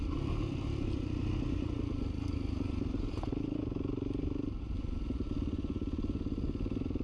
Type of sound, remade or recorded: recorded